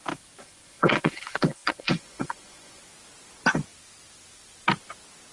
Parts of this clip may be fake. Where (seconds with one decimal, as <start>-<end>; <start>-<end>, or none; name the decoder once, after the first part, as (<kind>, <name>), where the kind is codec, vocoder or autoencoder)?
0.4-2.8 (vocoder, Vocos)